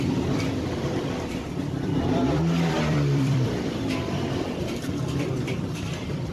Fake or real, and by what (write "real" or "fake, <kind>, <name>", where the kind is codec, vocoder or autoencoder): fake, vocoder, BigVGAN v2